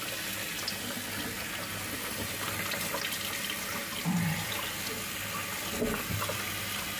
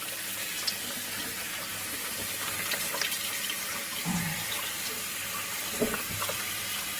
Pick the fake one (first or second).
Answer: second